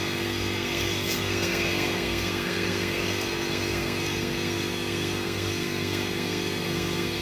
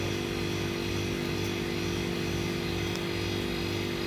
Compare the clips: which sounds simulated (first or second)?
first